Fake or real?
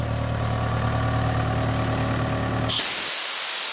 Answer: real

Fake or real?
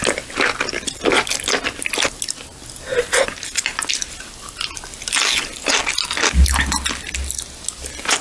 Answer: real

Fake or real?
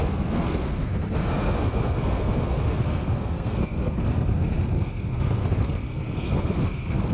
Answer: fake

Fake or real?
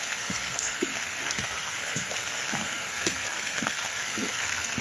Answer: fake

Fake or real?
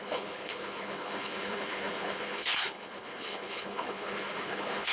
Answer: fake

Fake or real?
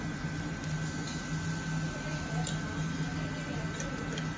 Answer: real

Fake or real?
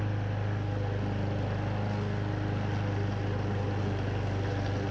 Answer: real